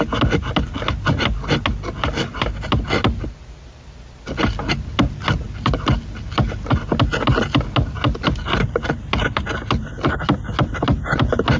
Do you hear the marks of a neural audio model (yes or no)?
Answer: no